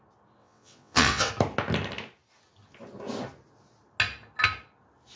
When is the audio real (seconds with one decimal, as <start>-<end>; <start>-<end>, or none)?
0.0-0.4; 1.3-5.2